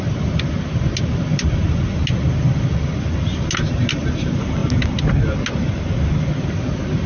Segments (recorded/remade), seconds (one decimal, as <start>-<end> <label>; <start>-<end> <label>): 0.0-7.1 recorded